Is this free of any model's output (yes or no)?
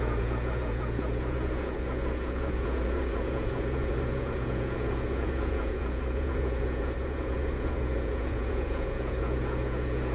no